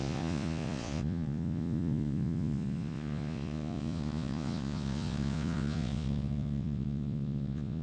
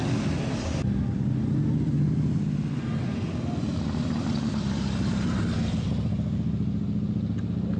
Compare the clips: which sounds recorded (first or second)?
second